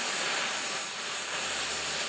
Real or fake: fake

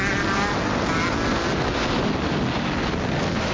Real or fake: real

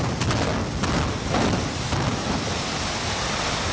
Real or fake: real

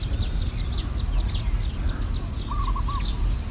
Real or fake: real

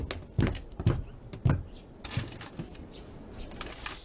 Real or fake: real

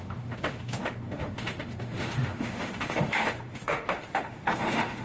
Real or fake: fake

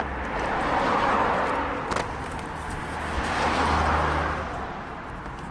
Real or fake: real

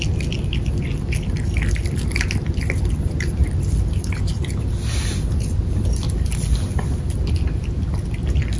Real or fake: real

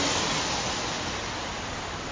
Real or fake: real